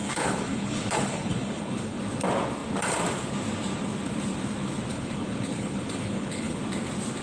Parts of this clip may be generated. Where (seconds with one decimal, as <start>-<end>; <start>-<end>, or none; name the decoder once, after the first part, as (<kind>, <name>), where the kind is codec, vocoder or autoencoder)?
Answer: 0.0-2.0 (codec, HILCodec); 4.9-6.6